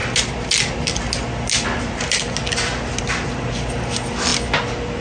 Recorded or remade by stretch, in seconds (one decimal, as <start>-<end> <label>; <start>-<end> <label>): 0.0-5.0 recorded